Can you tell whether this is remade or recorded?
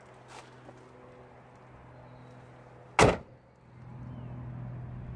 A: recorded